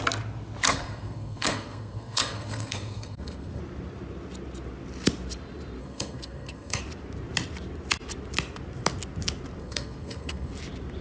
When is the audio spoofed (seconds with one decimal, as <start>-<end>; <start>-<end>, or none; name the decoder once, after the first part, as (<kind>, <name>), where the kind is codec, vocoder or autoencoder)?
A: 0.7-3.6 (codec, SNAC); 5.8-6.8; 9.6-10.5